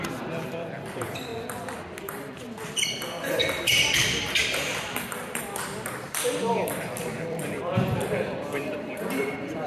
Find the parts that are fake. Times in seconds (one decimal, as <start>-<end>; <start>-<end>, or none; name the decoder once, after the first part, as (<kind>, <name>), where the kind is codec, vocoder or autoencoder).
0.0-1.3 (vocoder, BigVGAN v2); 2.0-9.7